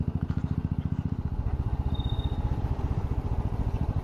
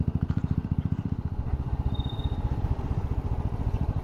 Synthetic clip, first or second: second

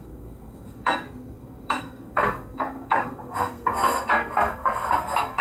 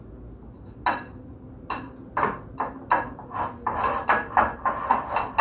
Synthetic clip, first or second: first